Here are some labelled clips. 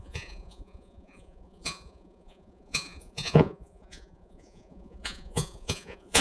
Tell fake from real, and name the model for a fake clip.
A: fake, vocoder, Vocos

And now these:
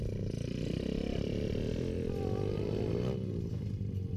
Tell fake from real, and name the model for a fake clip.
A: real